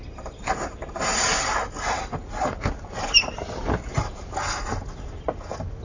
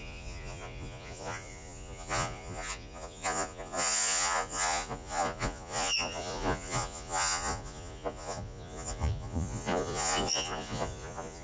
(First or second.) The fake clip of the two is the second